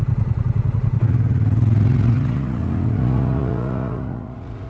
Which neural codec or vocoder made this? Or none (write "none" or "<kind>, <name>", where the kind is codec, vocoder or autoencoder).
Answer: vocoder, Vocos